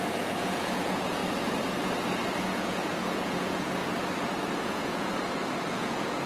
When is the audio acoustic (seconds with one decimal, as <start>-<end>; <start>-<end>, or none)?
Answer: 1.2-2.4; 3.8-4.4; 5.1-5.7